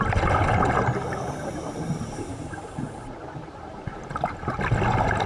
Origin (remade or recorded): recorded